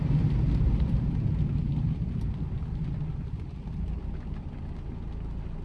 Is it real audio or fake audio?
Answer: real